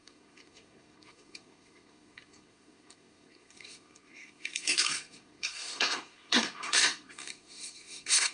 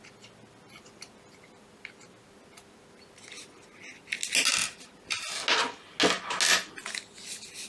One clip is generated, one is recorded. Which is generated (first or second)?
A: first